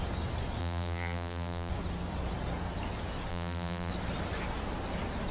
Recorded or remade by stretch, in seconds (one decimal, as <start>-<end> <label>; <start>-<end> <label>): 0.0-0.6 recorded; 0.6-1.7 remade; 1.7-3.3 recorded; 3.3-3.9 remade; 3.9-5.3 recorded